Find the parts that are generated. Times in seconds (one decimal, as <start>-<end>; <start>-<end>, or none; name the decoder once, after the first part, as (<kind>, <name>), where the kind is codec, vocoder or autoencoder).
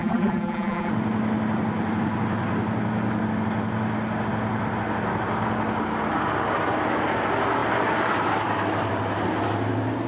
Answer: 0.0-0.9 (vocoder, BigVGAN v2)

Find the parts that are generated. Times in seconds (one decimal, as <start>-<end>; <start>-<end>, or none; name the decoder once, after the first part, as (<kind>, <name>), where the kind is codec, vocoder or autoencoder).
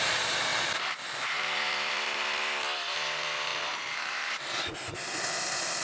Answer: 0.0-3.5 (vocoder, BigVGAN v2); 4.3-5.8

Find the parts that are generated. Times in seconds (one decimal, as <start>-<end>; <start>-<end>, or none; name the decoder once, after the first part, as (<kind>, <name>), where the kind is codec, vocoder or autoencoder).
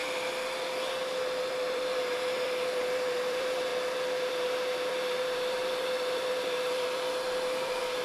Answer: 1.5-3.7 (vocoder, BigVGAN v2); 4.3-8.0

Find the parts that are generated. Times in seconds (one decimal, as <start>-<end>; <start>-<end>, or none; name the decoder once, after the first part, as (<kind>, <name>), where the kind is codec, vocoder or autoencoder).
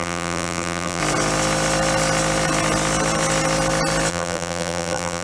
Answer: 0.0-1.0 (vocoder, BigVGAN v2); 4.1-5.2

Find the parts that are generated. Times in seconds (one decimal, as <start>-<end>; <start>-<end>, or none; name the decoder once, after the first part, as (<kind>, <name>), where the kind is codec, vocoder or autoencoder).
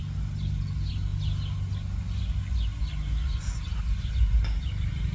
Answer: none